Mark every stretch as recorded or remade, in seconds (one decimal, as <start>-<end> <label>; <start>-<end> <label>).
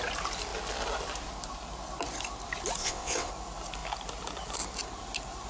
0.0-2.8 recorded; 2.8-3.3 remade; 3.3-5.5 recorded